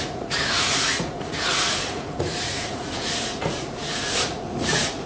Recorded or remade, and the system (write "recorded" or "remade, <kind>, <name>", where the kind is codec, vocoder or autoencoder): remade, vocoder, Vocos